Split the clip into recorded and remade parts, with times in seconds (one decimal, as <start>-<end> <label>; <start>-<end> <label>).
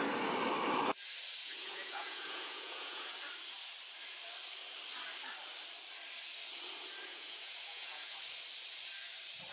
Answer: 0.0-1.4 recorded; 1.4-3.1 remade; 3.1-7.1 recorded; 7.1-8.2 remade; 8.2-9.5 recorded